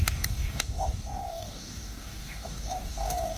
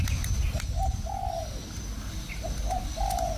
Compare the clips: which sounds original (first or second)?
second